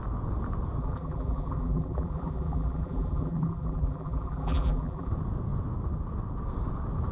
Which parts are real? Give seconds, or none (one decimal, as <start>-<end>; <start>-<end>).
0.0-0.8; 5.1-7.1